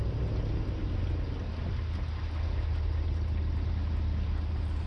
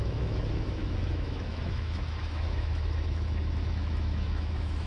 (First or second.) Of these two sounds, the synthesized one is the second